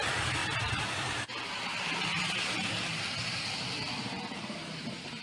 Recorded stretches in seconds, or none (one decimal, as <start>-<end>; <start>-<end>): 0.0-5.2